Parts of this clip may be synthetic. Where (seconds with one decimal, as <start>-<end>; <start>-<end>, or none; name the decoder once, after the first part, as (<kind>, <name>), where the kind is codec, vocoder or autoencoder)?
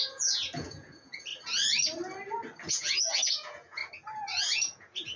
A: 0.0-1.3 (vocoder, Vocos); 2.7-3.8; 4.4-5.2